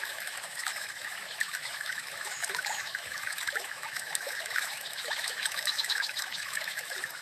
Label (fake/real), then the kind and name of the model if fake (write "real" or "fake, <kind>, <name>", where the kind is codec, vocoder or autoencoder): fake, autoencoder, DAC-VAE